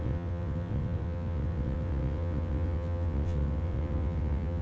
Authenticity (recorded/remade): remade